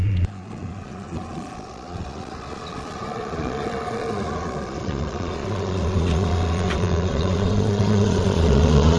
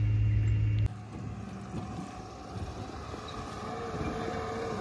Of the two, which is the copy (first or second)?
first